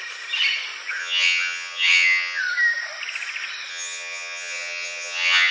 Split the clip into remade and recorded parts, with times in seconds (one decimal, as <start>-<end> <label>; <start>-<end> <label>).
0.0-1.0 recorded; 1.0-2.4 remade; 2.4-3.7 recorded; 3.7-5.5 remade

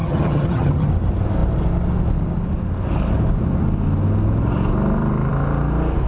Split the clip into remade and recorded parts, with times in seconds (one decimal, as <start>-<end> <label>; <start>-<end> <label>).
0.0-0.9 remade; 0.9-6.1 recorded

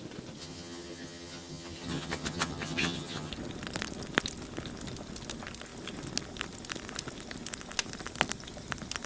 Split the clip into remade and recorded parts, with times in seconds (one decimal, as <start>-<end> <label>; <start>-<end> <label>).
0.0-0.4 recorded; 0.4-3.3 remade; 3.3-9.1 recorded

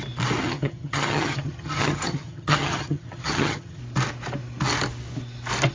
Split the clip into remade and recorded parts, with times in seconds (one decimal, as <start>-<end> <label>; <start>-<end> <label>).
0.0-0.4 recorded; 0.4-3.8 remade; 3.8-5.7 recorded

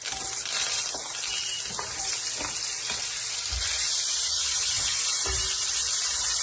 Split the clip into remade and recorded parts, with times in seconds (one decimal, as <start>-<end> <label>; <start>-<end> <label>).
0.0-4.3 recorded; 4.3-5.0 remade; 5.0-6.4 recorded